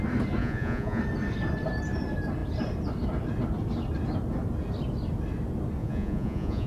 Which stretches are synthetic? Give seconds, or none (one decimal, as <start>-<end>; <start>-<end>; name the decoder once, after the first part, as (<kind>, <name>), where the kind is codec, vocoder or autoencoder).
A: 0.4-1.0 (vocoder, Vocos); 5.8-6.7